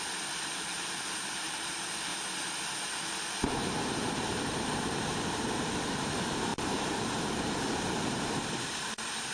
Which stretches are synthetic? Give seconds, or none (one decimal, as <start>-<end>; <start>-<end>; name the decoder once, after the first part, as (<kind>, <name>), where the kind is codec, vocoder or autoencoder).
0.0-2.1 (vocoder, BigVGAN v2); 3.5-9.3

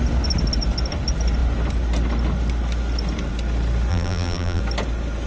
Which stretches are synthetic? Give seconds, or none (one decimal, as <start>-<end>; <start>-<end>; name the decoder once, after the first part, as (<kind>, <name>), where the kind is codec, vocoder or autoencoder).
3.9-4.6 (vocoder, BigVGAN v2)

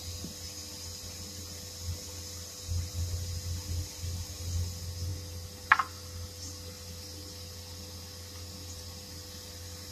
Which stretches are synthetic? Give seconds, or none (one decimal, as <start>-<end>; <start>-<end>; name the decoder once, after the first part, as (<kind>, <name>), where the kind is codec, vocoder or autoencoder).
none

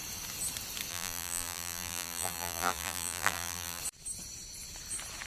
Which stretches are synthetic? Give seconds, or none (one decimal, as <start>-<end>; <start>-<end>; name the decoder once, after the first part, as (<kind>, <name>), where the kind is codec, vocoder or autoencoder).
0.9-3.8 (vocoder, BigVGAN v2)